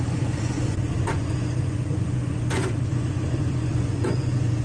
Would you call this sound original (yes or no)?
no